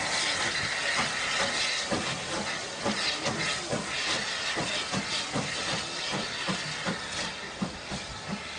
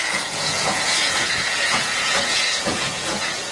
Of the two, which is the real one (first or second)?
first